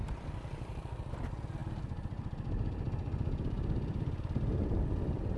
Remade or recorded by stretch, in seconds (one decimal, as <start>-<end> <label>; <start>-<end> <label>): 0.0-5.4 recorded